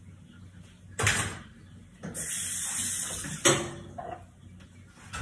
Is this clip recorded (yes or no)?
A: yes